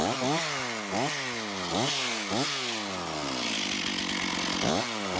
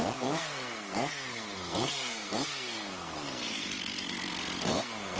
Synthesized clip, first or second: second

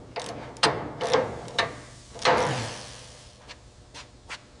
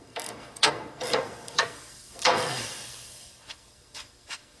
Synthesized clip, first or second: second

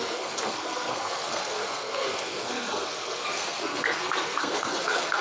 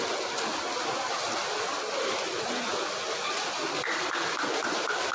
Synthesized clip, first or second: first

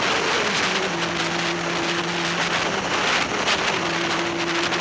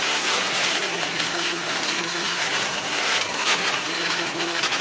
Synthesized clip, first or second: second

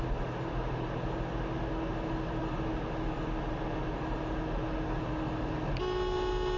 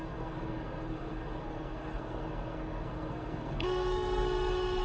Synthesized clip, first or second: second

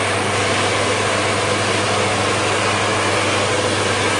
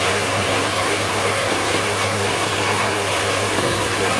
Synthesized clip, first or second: second